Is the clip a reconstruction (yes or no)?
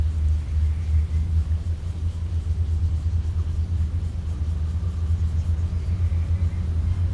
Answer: no